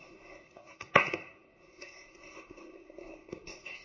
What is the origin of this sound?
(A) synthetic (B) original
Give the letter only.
A